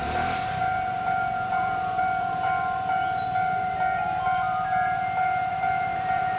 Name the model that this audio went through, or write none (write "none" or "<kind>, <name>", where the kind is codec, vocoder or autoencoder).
vocoder, BigVGAN v2